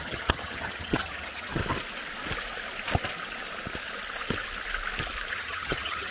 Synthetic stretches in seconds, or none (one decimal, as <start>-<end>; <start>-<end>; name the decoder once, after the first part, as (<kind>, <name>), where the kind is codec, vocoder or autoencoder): 0.0-1.6 (vocoder, HiFi-GAN); 5.3-6.1